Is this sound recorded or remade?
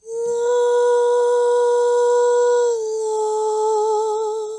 recorded